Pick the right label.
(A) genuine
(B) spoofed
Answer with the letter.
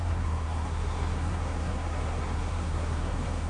B